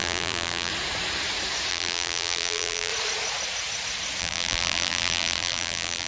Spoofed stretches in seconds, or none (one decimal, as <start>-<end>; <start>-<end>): 0.0-0.7; 1.7-2.9; 4.2-6.1